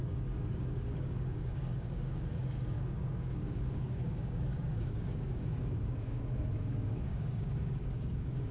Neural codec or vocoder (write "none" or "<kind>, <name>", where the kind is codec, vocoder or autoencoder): codec, DAC